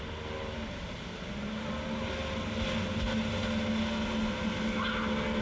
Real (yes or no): yes